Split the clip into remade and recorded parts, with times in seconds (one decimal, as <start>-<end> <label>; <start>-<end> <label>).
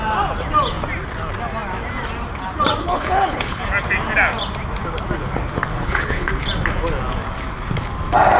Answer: 0.0-2.8 recorded; 2.8-3.6 remade; 3.6-5.7 recorded; 5.7-6.3 remade; 6.3-8.4 recorded